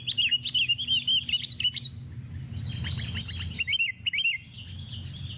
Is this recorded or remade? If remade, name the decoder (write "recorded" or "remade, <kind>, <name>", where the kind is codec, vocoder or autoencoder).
recorded